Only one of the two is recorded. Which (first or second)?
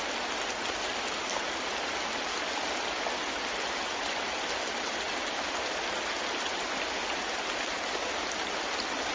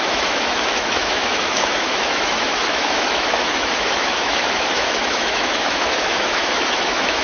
first